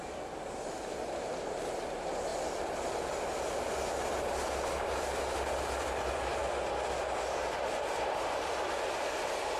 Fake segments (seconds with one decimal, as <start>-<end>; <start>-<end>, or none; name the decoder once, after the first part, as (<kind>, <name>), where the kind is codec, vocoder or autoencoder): none